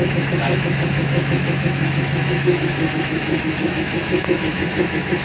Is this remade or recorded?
remade